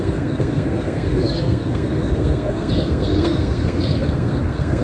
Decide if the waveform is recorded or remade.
remade